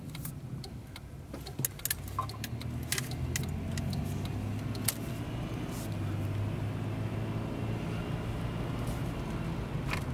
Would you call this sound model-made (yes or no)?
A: no